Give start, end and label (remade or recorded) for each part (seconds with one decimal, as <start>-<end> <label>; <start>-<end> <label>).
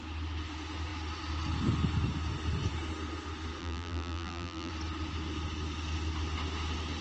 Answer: 0.0-3.6 recorded; 3.6-4.7 remade; 4.7-7.0 recorded